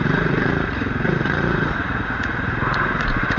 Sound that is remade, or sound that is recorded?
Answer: remade